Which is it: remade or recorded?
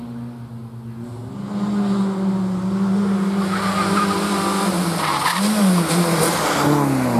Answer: recorded